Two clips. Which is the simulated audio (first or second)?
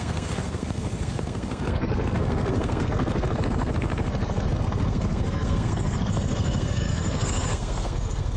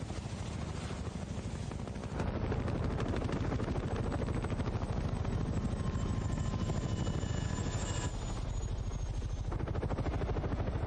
first